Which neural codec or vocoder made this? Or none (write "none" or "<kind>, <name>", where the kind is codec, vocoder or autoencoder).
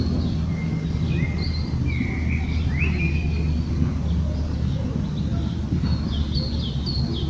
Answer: none